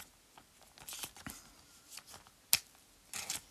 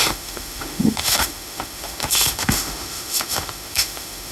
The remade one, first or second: second